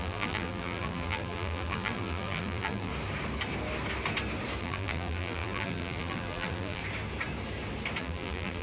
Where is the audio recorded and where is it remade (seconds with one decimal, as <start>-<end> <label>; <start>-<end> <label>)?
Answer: 0.0-2.9 remade; 2.9-4.6 recorded; 4.6-6.8 remade; 6.8-8.0 recorded; 8.0-8.6 remade